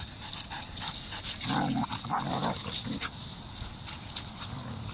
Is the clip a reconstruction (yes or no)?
no